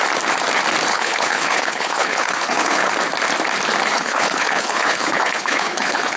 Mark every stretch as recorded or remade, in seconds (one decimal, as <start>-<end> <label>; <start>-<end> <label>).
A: 0.0-0.9 recorded; 0.9-2.9 remade; 2.9-3.9 recorded; 3.9-6.2 remade